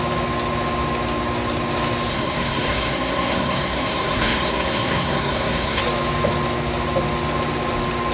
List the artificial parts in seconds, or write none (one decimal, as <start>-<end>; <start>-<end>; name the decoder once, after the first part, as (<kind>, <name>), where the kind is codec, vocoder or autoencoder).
2.1-5.8 (codec, SNAC)